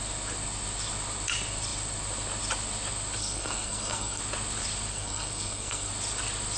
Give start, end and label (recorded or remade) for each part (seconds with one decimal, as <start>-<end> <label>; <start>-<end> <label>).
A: 0.0-3.2 recorded; 3.2-4.2 remade; 4.2-4.9 recorded; 4.9-5.9 remade; 5.9-6.6 recorded